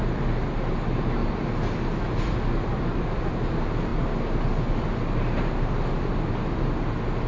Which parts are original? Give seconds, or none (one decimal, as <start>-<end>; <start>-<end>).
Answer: 0.0-7.3